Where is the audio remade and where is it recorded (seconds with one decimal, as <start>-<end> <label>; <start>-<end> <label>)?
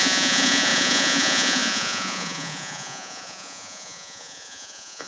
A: 0.0-5.1 remade